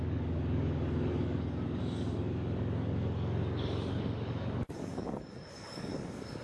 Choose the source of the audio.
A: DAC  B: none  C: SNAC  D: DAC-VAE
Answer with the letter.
A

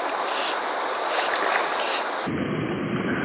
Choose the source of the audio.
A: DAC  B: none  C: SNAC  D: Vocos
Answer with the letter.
B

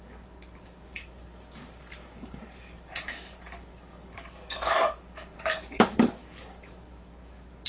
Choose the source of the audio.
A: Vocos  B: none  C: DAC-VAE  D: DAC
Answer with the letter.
D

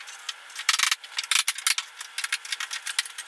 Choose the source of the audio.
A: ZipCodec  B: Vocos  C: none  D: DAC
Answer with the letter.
C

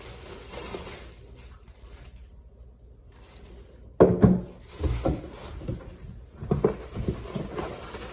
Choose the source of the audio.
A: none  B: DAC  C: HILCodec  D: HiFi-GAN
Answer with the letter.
A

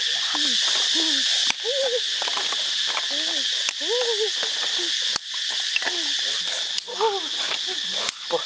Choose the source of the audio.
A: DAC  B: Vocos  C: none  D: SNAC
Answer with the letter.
C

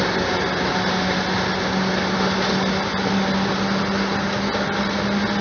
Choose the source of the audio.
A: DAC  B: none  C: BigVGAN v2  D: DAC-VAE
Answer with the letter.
B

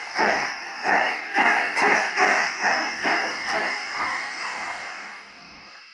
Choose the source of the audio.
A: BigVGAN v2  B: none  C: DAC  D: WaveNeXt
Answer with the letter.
C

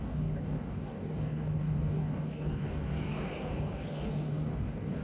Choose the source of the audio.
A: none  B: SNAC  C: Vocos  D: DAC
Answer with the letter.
D